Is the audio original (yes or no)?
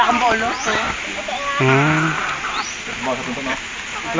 yes